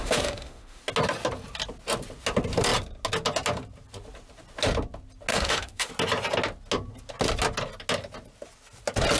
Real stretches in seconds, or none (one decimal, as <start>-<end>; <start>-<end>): 0.8-5.3; 5.9-9.2